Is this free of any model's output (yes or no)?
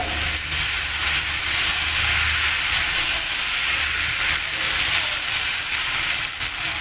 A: yes